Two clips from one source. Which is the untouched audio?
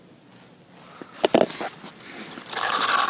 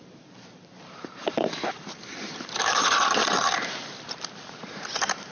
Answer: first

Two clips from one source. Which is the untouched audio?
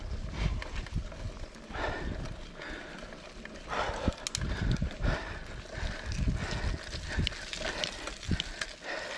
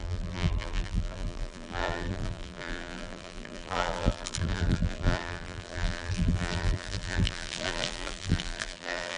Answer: first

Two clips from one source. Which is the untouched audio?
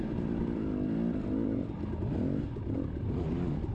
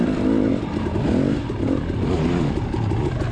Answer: second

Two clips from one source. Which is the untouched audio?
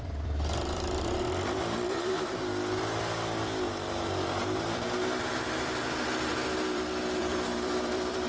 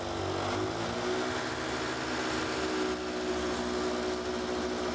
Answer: second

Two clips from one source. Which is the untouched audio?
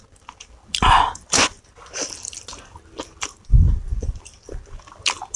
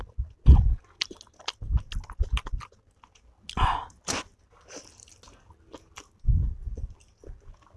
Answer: second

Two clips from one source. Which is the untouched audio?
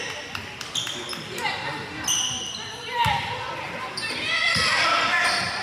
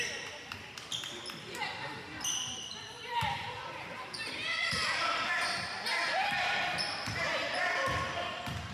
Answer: first